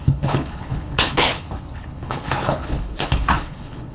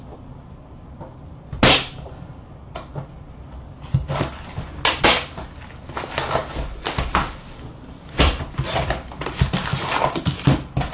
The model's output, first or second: first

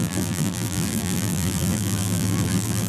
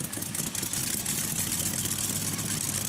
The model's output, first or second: first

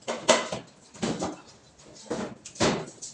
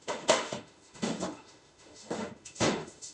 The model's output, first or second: second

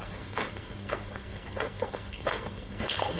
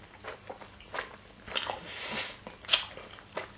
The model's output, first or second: first